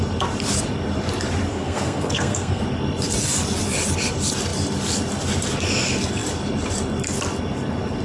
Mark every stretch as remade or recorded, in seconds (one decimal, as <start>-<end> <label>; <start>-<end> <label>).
0.0-1.5 recorded; 1.5-2.6 remade; 2.6-8.0 recorded

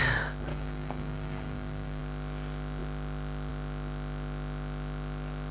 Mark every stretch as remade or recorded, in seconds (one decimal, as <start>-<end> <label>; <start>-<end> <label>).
0.0-0.5 recorded; 0.5-2.0 remade; 2.0-5.5 recorded